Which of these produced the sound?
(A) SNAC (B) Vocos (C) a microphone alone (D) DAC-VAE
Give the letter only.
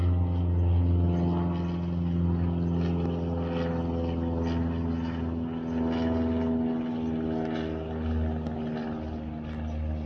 C